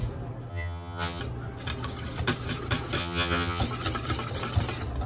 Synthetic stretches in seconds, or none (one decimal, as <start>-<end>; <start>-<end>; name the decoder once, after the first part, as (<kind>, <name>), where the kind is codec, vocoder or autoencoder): 0.5-1.2 (vocoder, HiFi-GAN); 3.0-3.6